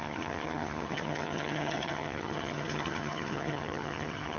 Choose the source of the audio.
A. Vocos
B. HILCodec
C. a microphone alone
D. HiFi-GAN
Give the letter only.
D